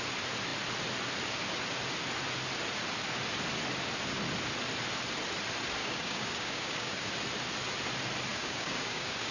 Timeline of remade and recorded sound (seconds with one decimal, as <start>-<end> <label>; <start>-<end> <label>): 0.0-5.8 recorded; 5.8-7.1 remade; 7.1-8.3 recorded; 8.3-9.3 remade